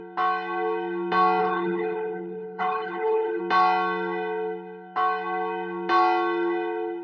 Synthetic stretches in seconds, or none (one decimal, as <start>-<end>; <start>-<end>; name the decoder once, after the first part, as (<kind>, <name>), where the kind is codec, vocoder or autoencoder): 1.4-3.4 (codec, HILCodec)